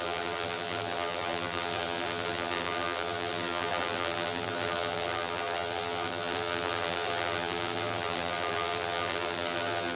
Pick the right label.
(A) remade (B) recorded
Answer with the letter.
A